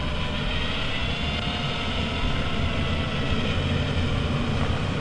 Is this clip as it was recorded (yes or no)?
yes